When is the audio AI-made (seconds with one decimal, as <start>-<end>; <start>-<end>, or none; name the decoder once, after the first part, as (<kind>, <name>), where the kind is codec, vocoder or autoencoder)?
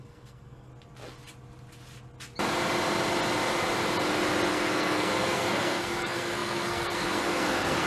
0.0-0.7 (codec, SNAC); 4.5-7.9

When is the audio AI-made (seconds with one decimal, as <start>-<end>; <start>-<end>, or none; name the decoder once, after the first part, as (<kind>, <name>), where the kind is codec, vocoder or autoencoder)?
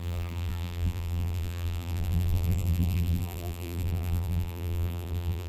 0.0-5.5 (vocoder, BigVGAN v2)